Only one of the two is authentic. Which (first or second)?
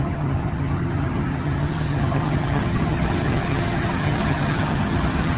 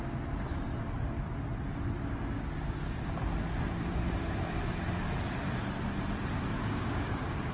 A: second